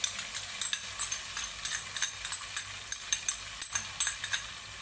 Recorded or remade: recorded